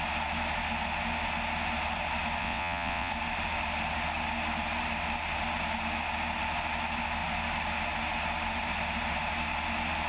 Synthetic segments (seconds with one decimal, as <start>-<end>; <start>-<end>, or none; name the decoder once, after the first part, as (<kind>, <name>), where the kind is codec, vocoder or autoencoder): 2.4-3.1 (vocoder, WaveNeXt)